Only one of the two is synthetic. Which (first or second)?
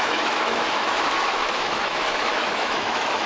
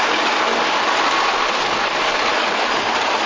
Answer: first